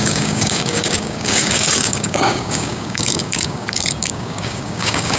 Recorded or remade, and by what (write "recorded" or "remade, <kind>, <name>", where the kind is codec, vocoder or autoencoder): remade, codec, DAC